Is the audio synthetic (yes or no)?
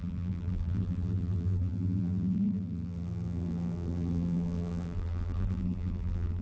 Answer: yes